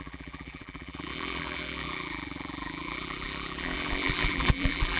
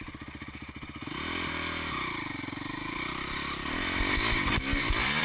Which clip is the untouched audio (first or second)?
second